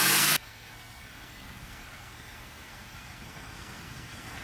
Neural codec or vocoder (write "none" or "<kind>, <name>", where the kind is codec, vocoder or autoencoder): codec, SNAC